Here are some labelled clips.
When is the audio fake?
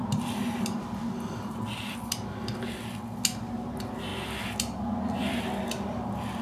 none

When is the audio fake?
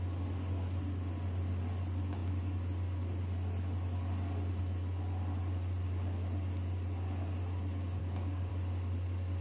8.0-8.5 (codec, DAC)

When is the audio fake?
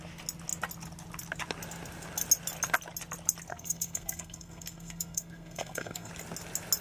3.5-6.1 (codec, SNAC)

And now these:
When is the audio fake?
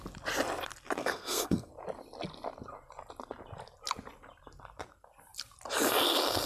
1.0-1.7 (codec, SNAC)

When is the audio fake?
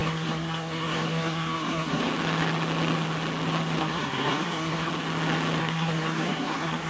0.0-2.0 (codec, SNAC); 3.8-4.9; 5.6-6.9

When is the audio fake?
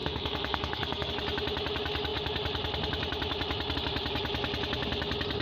0.0-1.1 (codec, SNAC)